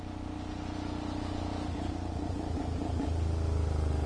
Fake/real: real